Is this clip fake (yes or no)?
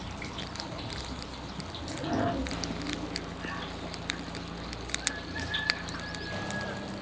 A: no